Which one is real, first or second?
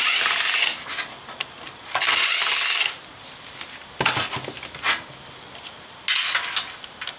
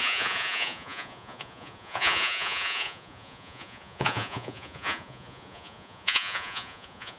first